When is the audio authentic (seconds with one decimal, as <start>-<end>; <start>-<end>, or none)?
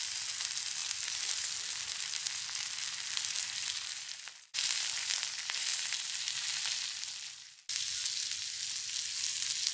0.0-9.7